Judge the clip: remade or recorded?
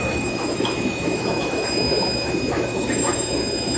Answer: remade